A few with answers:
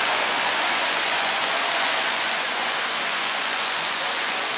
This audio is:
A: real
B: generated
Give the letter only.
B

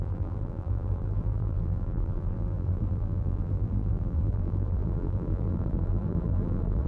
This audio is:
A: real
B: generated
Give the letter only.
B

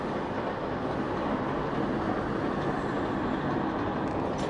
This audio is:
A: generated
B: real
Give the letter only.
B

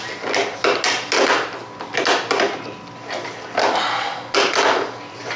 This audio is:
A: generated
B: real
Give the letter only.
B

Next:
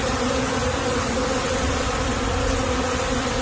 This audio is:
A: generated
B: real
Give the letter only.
B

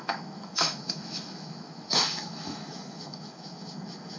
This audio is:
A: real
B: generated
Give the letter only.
B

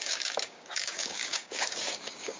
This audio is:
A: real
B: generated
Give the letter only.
B